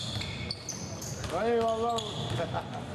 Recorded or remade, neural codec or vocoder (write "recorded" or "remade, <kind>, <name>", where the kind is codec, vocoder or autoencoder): recorded